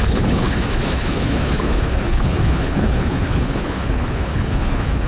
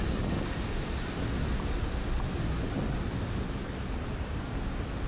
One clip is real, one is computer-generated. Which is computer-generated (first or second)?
first